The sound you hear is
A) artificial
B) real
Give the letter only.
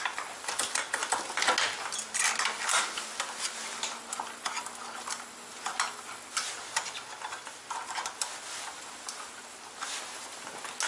B